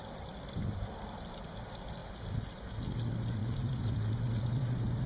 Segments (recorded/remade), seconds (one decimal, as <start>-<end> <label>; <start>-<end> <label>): 0.0-0.6 recorded; 0.6-1.5 remade; 1.5-3.4 recorded; 3.4-5.1 remade